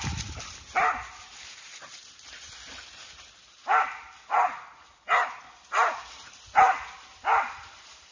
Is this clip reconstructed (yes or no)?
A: no